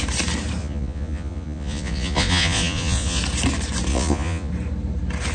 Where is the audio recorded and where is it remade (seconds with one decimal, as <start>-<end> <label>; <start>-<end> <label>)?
0.0-0.6 recorded; 0.6-3.2 remade; 3.2-3.9 recorded; 3.9-4.5 remade; 4.5-5.3 recorded